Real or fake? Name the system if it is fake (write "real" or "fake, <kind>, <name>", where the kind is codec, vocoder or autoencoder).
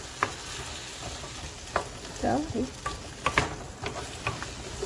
real